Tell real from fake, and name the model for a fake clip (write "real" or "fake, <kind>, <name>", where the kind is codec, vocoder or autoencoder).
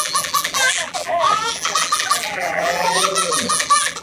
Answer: fake, vocoder, BigVGAN v2